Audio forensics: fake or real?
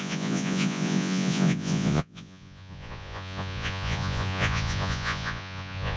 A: fake